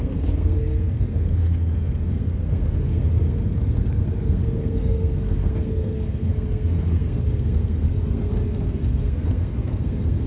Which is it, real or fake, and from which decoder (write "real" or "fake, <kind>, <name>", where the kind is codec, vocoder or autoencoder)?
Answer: fake, codec, SNAC